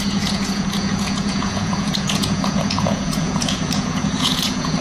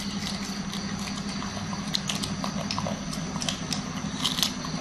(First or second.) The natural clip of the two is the second